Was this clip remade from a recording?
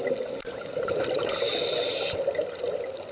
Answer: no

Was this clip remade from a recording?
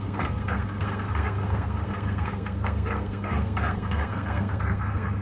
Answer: yes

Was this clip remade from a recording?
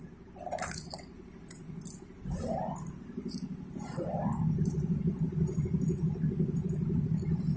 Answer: no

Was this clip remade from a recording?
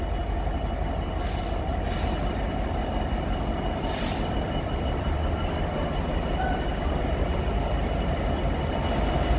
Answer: no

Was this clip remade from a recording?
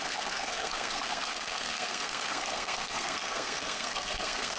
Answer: yes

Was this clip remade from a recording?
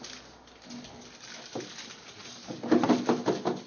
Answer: no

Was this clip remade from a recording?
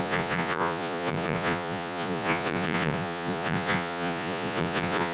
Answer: yes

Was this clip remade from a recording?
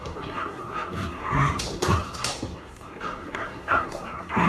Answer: yes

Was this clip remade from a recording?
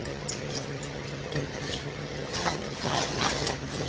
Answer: yes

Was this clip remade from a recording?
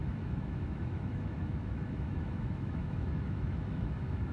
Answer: yes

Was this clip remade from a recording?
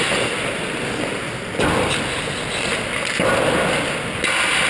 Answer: no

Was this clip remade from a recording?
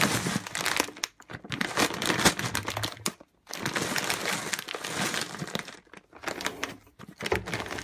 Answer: no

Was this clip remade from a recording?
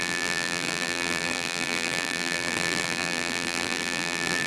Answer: yes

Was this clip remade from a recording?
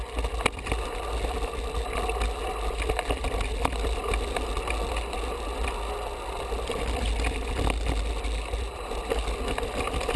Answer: no